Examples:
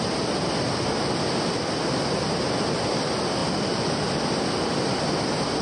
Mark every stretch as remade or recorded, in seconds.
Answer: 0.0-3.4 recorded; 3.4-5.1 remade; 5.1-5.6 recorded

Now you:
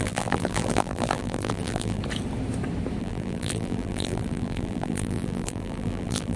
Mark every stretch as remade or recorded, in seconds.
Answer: 0.0-2.0 remade; 2.0-3.0 recorded; 3.0-6.4 remade

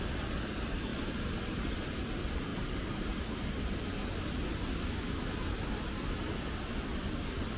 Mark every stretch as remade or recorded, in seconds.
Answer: 0.0-0.9 recorded; 0.9-2.0 remade; 2.0-2.5 recorded; 2.5-4.5 remade; 4.5-7.6 recorded

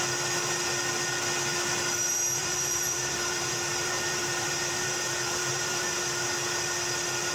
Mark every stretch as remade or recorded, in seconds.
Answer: 0.0-2.4 recorded; 2.4-6.0 remade; 6.0-7.3 recorded

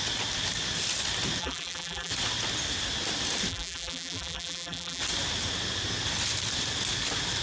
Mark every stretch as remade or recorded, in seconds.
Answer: 0.0-1.4 recorded; 1.4-2.1 remade; 2.1-3.5 recorded; 3.5-5.0 remade; 5.0-7.4 recorded

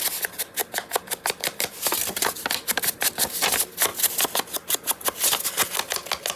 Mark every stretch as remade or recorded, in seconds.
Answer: 0.0-0.6 recorded; 0.6-2.1 remade; 2.1-6.4 recorded

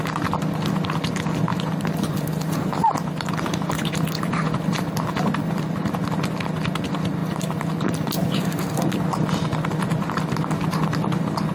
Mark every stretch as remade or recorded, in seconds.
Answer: 0.0-1.5 recorded; 1.5-5.9 remade; 5.9-7.2 recorded; 7.2-8.9 remade; 8.9-11.5 recorded